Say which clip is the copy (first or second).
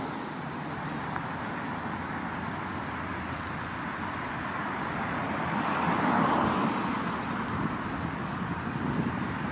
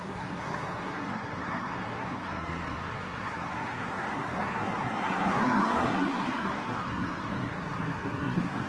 second